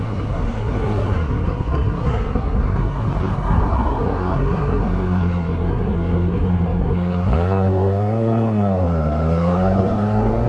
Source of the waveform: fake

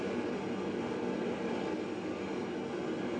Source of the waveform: real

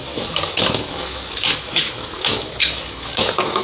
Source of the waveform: fake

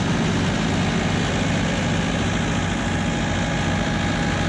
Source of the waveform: real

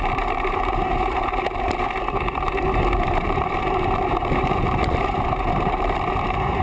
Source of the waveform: fake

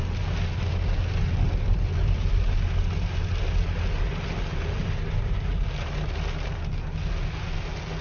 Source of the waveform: real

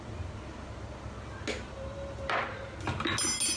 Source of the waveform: real